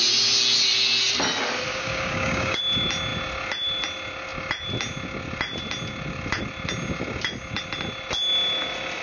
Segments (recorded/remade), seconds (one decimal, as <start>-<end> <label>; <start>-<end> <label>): 0.0-1.7 recorded; 1.7-2.6 remade; 2.6-9.0 recorded